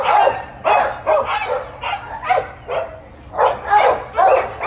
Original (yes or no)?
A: yes